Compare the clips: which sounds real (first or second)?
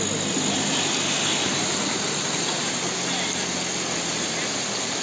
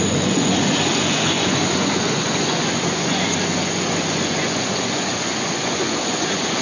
first